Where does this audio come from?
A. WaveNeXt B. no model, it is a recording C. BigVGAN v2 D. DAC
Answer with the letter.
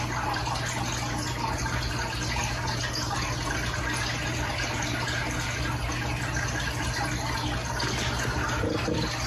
B